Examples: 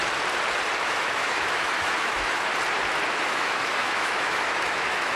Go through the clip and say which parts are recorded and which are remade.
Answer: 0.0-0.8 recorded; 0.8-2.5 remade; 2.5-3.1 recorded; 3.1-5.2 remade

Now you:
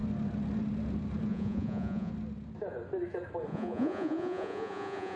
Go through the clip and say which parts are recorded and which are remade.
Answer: 0.0-1.3 recorded; 1.3-2.1 remade; 2.1-3.5 recorded; 3.5-5.2 remade